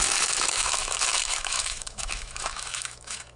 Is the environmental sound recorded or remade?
remade